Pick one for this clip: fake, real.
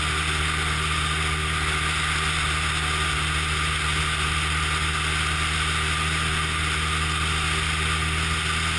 real